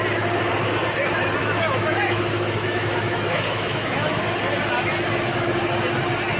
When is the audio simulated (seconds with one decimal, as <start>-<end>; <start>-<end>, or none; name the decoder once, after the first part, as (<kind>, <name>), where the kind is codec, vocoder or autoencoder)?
1.4-4.2 (autoencoder, DAC-VAE)